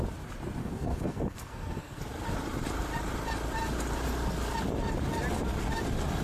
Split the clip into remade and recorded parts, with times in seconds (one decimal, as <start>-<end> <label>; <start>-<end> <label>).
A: 0.0-0.6 recorded; 0.6-2.0 remade; 2.0-6.2 recorded